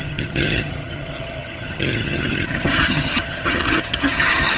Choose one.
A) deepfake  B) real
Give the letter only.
A